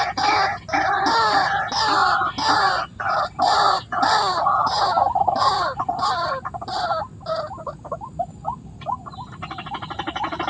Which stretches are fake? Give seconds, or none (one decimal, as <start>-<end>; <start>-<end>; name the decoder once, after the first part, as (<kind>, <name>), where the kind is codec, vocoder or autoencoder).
none